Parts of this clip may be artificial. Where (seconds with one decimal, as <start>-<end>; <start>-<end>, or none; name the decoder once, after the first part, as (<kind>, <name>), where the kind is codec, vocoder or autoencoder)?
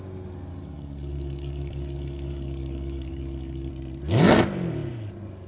0.5-3.7 (codec, DAC)